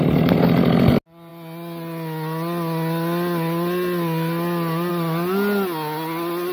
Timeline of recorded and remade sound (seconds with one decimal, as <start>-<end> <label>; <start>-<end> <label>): 0.0-6.5 recorded

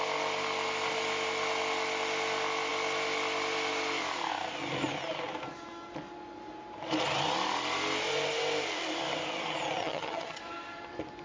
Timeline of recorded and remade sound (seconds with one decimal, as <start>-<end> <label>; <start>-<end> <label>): 0.0-9.8 recorded; 9.8-10.4 remade; 10.4-11.2 recorded

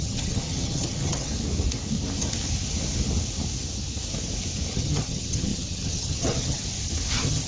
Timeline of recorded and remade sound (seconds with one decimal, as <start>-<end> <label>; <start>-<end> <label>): 0.0-1.3 remade; 1.3-4.7 recorded; 4.7-6.6 remade; 6.6-7.1 recorded; 7.1-7.5 remade